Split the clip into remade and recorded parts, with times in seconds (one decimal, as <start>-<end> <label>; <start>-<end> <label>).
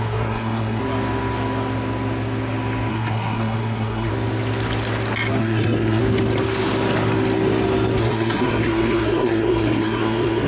0.0-0.8 remade; 0.8-2.9 recorded; 2.9-4.1 remade; 4.1-5.4 recorded; 5.4-6.0 remade; 6.0-8.0 recorded; 8.0-10.5 remade